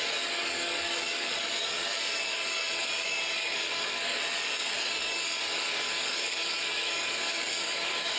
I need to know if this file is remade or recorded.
remade